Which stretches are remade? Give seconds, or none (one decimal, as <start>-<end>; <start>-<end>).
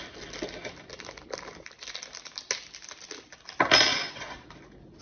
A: 3.9-4.5